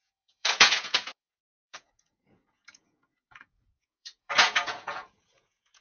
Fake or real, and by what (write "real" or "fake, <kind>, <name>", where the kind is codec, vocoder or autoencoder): fake, vocoder, Vocos